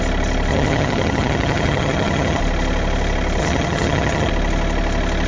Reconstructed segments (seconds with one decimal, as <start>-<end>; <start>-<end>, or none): 0.5-2.4; 3.4-4.3